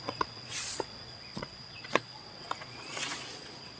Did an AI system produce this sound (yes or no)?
yes